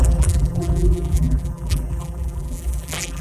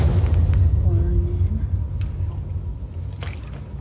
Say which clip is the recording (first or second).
second